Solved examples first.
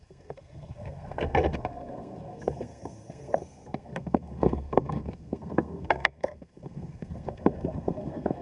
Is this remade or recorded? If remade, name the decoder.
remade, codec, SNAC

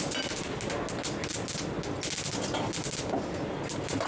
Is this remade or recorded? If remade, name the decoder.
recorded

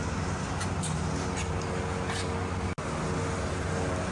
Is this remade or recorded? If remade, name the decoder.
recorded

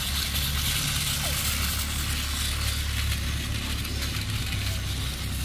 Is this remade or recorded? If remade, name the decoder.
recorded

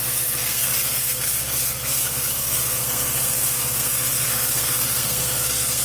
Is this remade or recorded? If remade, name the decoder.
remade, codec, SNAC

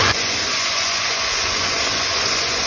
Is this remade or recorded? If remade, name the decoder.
remade, vocoder, Vocos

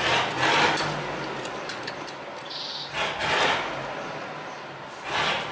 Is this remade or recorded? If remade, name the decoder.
recorded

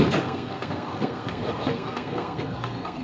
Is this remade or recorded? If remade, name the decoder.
remade, codec, SNAC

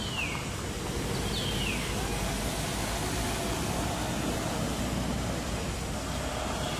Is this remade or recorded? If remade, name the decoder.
recorded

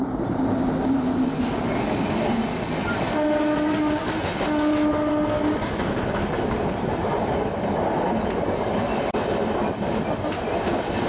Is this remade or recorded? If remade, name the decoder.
recorded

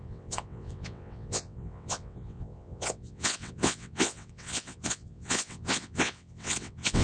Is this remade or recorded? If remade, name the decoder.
remade, vocoder, WaveNeXt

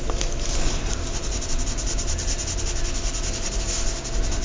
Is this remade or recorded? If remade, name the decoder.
recorded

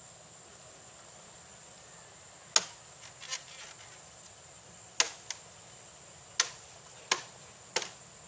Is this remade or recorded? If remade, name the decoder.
recorded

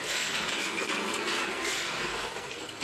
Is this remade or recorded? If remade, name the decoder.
remade, codec, SNAC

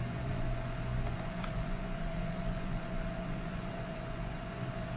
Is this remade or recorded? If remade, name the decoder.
remade, vocoder, Vocos